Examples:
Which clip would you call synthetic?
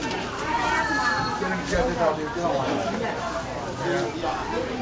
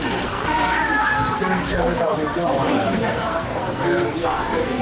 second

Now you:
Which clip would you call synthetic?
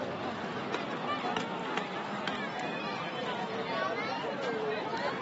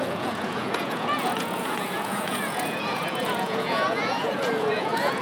second